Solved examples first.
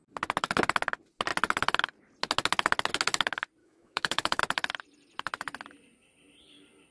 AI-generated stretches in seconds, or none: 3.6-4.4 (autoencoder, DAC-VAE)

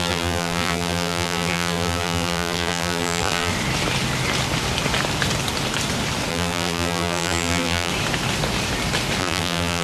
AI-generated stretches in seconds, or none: 0.0-3.5 (vocoder, BigVGAN v2); 6.3-7.9; 9.2-9.8

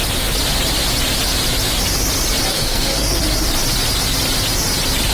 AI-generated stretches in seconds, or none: 2.5-3.2 (codec, SNAC)

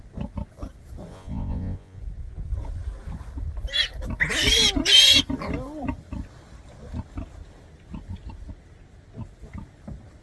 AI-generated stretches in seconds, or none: 1.1-2.0 (vocoder, Vocos)

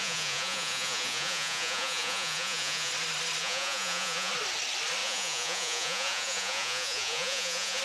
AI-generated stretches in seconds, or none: 0.0-2.9 (vocoder, Vocos); 3.4-4.3; 5.0-7.8

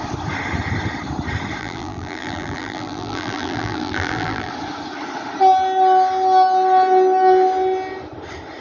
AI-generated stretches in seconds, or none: 1.6-4.5 (vocoder, BigVGAN v2)

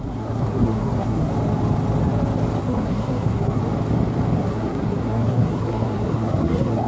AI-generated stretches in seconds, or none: 0.0-1.3 (codec, SNAC); 2.6-3.6; 4.4-6.9